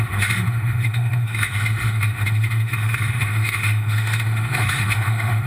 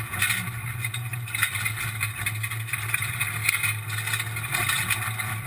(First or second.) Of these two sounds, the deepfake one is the first